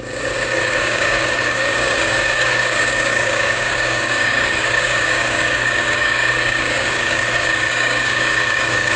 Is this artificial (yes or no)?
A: yes